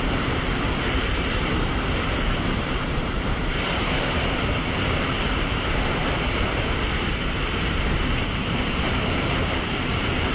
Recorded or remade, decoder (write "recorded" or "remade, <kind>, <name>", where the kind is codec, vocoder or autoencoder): remade, vocoder, BigVGAN v2